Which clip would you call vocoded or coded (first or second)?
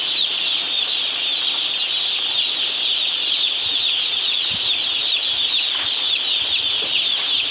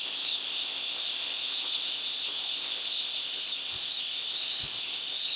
second